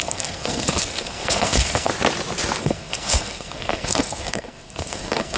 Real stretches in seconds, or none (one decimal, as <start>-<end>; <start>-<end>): 1.9-2.6